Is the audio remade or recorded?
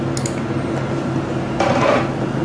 recorded